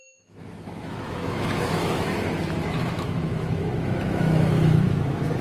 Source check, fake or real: fake